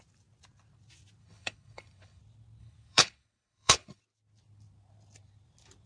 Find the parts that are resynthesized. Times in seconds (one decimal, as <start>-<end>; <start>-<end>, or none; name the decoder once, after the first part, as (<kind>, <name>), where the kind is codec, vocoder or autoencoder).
1.2-2.2 (codec, HILCodec); 2.6-4.0